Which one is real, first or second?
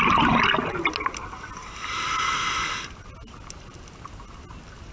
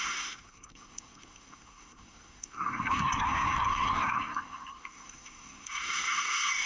first